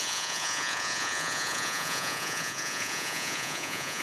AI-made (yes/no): yes